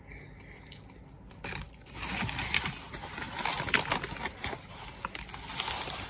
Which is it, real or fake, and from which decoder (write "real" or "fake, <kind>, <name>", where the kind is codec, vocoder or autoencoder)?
real